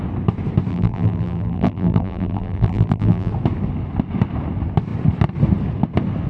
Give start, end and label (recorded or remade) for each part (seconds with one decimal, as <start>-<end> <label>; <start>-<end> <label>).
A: 0.0-0.7 recorded; 0.7-3.3 remade; 3.3-6.3 recorded